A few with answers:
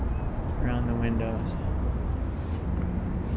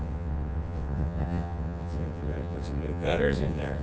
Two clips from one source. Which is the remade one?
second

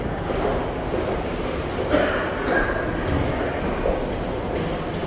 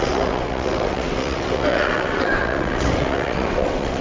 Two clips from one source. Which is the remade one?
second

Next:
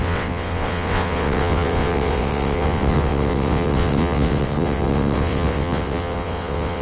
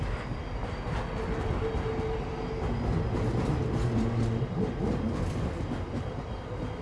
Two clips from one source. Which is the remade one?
first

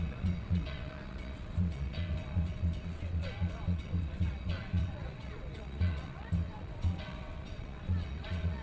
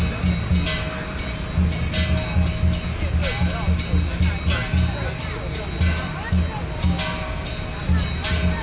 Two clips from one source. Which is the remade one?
first